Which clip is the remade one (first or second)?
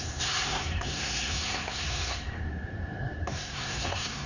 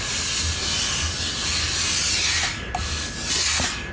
first